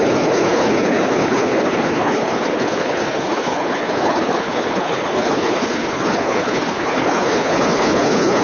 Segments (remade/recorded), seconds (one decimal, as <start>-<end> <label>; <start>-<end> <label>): 0.0-8.4 remade